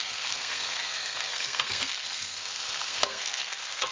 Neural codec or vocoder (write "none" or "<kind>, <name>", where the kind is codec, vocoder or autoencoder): codec, SNAC